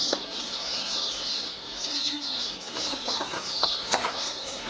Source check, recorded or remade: remade